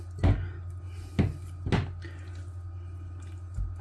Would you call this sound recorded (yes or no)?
yes